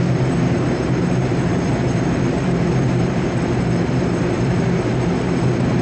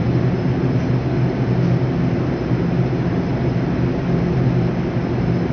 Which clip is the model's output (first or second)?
first